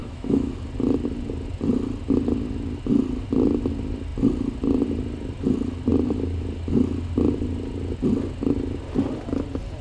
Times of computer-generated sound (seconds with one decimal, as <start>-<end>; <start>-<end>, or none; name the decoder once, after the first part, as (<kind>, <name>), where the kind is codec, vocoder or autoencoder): 0.0-0.5 (autoencoder, DAC-VAE)